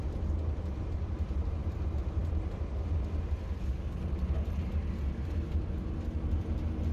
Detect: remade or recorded recorded